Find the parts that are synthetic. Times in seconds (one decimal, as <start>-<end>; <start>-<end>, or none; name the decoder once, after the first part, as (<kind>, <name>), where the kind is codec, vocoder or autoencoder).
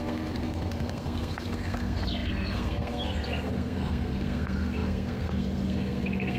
0.0-6.4 (codec, SNAC)